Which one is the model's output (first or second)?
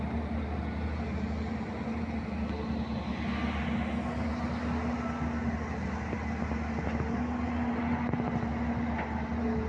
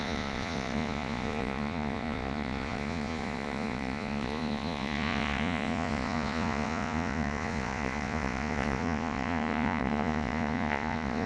second